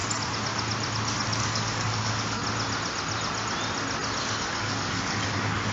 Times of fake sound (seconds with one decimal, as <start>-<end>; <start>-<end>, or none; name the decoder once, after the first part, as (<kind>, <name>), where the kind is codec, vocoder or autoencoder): 1.4-2.4 (codec, DAC); 4.2-5.7